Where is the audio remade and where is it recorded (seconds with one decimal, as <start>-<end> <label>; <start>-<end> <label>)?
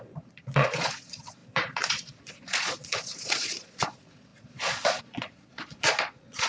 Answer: 0.0-6.5 remade